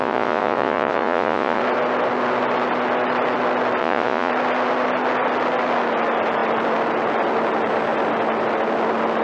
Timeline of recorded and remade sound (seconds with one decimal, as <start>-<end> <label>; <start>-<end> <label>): 0.0-1.6 remade; 1.6-3.8 recorded; 3.8-4.3 remade; 4.3-9.2 recorded